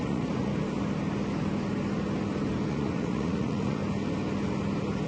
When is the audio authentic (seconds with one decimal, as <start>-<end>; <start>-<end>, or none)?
0.5-2.7; 3.8-5.1